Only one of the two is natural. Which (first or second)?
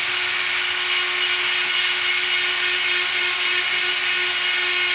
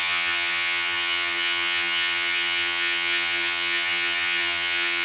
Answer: first